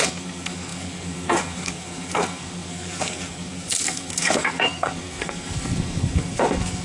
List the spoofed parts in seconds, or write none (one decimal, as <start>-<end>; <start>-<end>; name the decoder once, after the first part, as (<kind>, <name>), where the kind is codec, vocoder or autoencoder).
0.0-6.8 (codec, SNAC)